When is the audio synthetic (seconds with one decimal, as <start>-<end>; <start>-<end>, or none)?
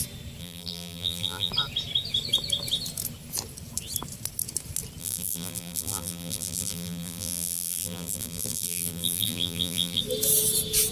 0.4-1.5; 5.0-10.0